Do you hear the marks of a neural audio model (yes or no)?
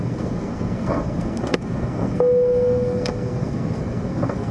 yes